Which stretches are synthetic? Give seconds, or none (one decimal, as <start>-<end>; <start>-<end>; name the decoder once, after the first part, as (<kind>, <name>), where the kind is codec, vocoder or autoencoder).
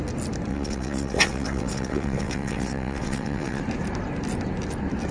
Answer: 0.5-3.6 (vocoder, WaveNeXt)